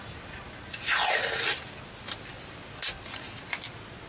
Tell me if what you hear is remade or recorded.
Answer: recorded